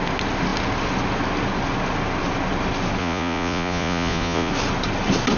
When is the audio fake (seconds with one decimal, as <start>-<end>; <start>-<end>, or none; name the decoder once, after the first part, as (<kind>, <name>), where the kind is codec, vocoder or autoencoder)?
3.0-4.5 (vocoder, Vocos)